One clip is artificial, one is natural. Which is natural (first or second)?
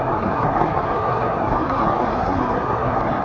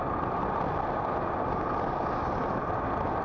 second